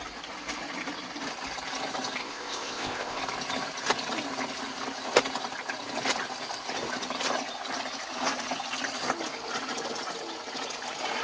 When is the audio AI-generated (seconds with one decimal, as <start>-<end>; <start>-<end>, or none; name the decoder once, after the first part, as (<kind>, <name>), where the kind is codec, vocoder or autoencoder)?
2.2-3.2 (codec, ZipCodec)